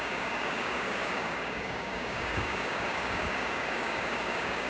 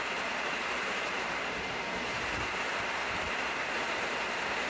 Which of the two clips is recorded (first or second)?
second